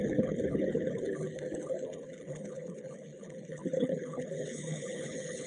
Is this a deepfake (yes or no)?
yes